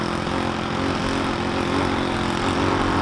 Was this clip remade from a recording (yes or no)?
no